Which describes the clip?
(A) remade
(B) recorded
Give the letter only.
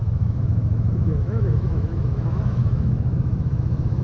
A